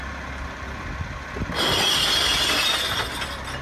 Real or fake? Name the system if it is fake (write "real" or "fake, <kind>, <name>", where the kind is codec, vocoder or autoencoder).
real